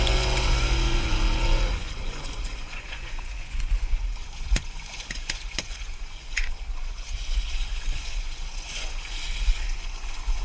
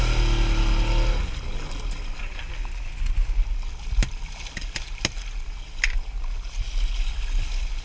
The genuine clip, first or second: second